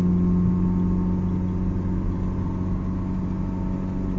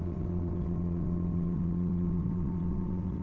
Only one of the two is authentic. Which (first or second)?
first